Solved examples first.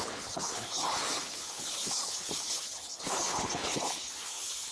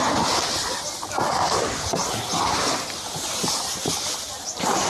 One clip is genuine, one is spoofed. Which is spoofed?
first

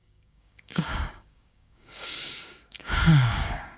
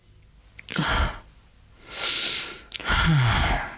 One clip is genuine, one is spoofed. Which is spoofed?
first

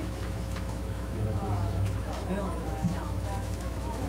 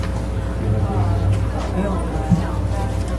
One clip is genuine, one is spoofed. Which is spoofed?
first